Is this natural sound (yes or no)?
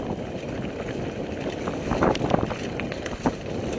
yes